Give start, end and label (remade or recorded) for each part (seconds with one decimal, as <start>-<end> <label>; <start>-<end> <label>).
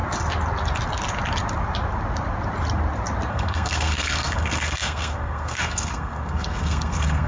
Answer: 0.0-3.3 recorded; 3.3-7.3 remade